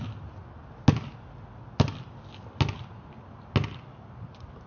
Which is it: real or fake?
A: real